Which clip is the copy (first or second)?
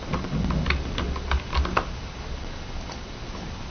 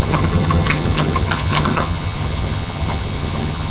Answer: second